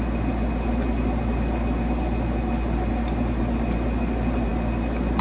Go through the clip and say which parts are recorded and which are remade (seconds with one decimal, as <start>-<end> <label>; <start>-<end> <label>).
0.0-5.2 recorded